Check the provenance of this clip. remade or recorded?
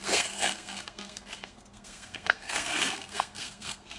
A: remade